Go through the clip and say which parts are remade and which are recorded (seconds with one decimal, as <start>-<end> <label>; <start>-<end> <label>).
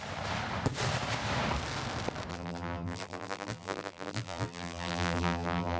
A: 0.0-2.3 recorded; 2.3-5.8 remade